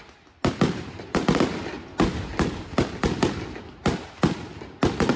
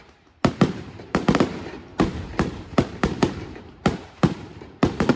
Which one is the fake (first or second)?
second